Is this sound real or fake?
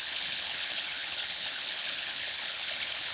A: fake